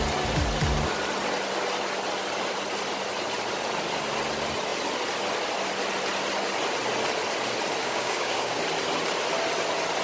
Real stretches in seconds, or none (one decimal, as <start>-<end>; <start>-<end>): 0.0-7.8; 8.6-10.0